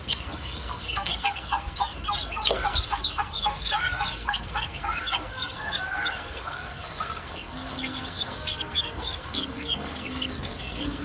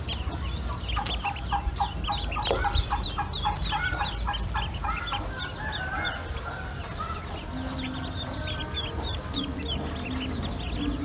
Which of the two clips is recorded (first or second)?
second